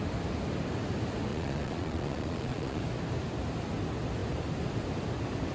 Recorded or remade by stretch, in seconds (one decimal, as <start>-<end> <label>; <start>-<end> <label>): 0.0-1.3 recorded; 1.3-2.8 remade; 2.8-5.5 recorded

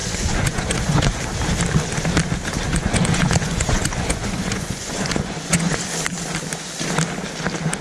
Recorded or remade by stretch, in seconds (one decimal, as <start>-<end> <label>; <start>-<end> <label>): 0.0-1.2 remade; 1.2-2.7 recorded; 2.7-5.8 remade; 5.8-7.8 recorded

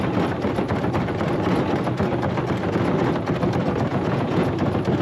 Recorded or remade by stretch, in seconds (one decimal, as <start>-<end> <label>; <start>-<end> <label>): 0.0-3.9 recorded; 3.9-4.5 remade; 4.5-5.0 recorded

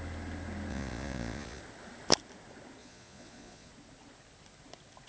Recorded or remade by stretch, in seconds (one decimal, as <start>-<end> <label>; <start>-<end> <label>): 0.0-0.7 recorded; 0.7-1.6 remade; 1.6-2.8 recorded; 2.8-3.7 remade; 3.7-5.1 recorded

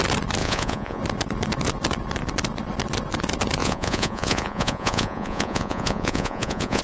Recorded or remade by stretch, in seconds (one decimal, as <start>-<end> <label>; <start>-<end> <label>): 0.0-0.4 recorded; 0.4-1.0 remade; 1.0-3.6 recorded; 3.6-6.8 remade

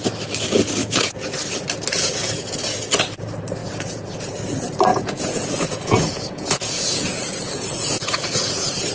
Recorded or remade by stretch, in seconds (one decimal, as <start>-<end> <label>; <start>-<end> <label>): 0.0-0.8 recorded; 0.8-1.3 remade; 1.3-3.6 recorded; 3.6-4.1 remade; 4.1-4.9 recorded; 4.9-8.9 remade

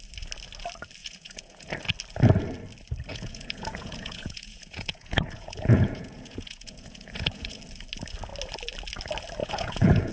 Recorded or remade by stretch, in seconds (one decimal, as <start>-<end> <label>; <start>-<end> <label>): 0.0-1.0 recorded; 1.0-1.7 remade; 1.7-3.1 recorded; 3.1-7.6 remade; 7.6-9.4 recorded; 9.4-10.1 remade